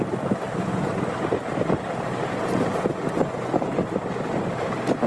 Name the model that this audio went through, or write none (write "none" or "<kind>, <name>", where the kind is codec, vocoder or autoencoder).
none